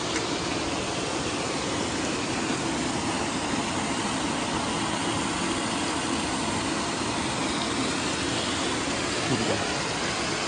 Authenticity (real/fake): real